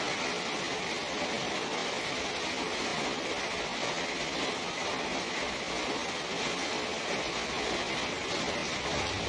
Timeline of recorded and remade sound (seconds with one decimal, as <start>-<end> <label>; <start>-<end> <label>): 0.0-9.3 recorded